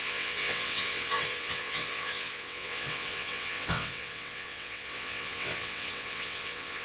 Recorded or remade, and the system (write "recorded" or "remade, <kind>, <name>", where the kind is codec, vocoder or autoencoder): remade, vocoder, WaveNeXt